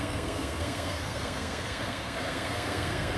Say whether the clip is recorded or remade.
remade